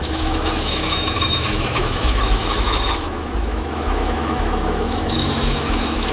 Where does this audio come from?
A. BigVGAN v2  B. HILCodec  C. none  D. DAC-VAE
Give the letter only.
D